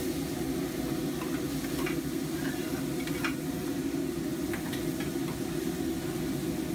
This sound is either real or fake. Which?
real